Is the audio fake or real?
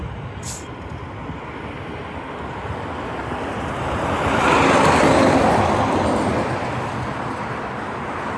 real